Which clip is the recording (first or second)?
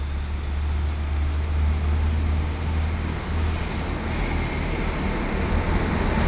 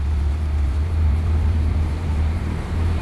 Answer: first